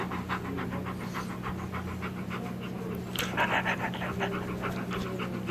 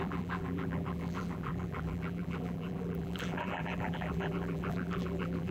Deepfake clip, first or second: second